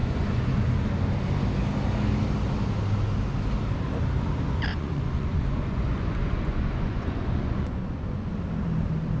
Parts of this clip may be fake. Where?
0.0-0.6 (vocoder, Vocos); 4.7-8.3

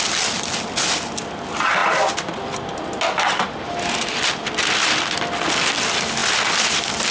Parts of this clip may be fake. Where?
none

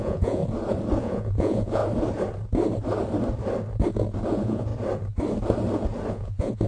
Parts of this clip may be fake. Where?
0.0-0.4 (vocoder, Vocos); 1.0-1.8; 4.3-4.7; 6.1-6.7

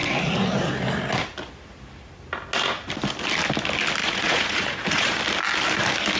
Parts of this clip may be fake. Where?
4.0-5.2 (vocoder, Vocos)

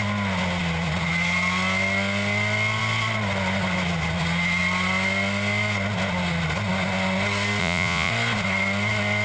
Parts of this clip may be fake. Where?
7.6-8.1 (vocoder, Vocos)

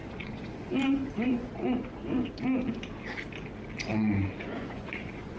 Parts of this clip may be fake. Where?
0.0-2.3 (vocoder, Vocos); 3.9-5.4